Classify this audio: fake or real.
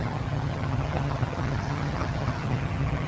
fake